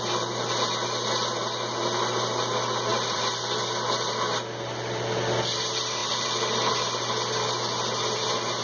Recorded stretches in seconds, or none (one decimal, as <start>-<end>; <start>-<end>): 0.0-2.9; 3.6-6.0; 6.7-8.6